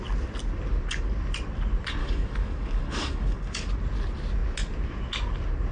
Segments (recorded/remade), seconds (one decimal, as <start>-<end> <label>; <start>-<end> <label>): 0.0-2.0 recorded; 2.0-3.7 remade; 3.7-5.7 recorded